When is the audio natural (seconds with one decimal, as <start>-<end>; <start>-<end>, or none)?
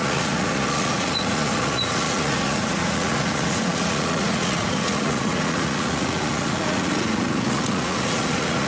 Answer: none